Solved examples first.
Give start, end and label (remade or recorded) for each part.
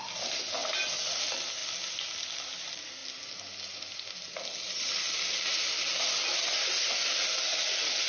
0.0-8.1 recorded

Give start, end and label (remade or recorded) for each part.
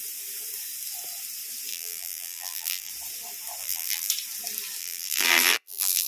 0.0-1.7 recorded; 1.7-2.9 remade; 2.9-3.6 recorded; 3.6-4.1 remade; 4.1-4.8 recorded; 4.8-6.1 remade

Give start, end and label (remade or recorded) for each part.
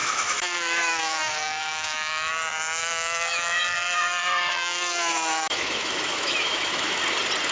0.0-2.3 remade; 2.3-2.8 recorded; 2.8-7.0 remade; 7.0-7.5 recorded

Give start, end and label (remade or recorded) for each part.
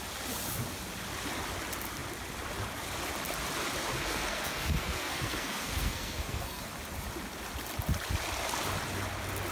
0.0-3.9 recorded; 3.9-6.6 remade; 6.6-9.5 recorded